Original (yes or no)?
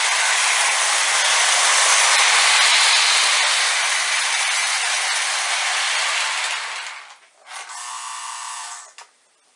yes